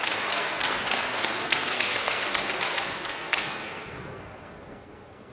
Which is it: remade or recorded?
remade